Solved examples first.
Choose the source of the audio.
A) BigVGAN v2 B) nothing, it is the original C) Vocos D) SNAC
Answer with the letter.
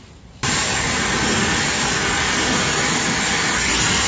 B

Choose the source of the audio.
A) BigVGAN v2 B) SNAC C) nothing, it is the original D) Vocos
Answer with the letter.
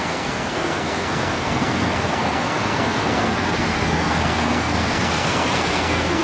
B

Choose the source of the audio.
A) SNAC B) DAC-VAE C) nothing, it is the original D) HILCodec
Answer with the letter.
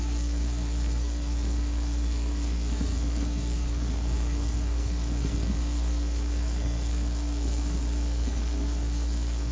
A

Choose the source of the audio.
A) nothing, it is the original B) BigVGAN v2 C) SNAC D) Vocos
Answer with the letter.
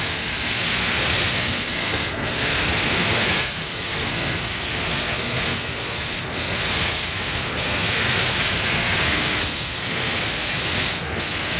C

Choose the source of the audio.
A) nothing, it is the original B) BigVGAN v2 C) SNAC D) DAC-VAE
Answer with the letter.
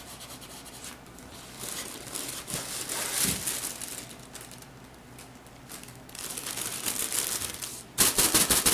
A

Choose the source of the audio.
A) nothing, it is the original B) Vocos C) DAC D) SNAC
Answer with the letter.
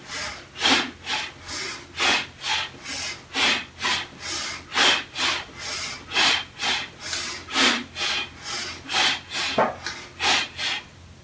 A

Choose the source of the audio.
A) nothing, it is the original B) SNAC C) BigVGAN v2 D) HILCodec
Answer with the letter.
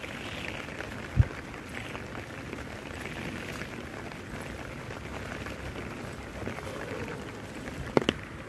A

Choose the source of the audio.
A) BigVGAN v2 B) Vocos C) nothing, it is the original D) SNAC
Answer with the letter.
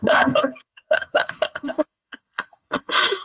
D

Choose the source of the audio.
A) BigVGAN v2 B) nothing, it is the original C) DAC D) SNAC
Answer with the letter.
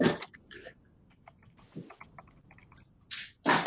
B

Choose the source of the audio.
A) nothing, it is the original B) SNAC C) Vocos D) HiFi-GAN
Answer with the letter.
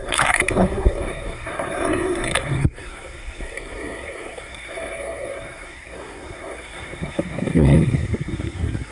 B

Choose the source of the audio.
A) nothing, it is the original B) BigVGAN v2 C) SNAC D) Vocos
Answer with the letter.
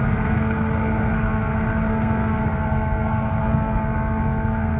C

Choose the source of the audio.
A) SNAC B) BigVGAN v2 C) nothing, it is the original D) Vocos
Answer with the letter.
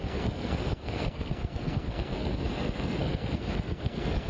A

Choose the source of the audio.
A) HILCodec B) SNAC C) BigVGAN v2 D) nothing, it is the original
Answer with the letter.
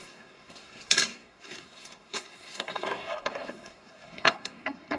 B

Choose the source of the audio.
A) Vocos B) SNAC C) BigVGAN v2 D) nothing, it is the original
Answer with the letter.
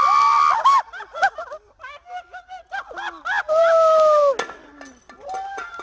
D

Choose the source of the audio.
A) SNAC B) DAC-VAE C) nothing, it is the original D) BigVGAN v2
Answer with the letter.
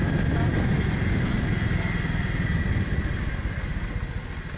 C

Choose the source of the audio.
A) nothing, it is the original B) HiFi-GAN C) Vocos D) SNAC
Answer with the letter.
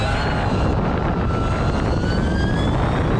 A